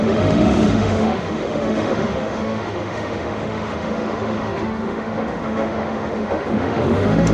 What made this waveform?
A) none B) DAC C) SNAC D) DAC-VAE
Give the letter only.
D